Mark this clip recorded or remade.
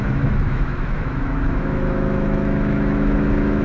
remade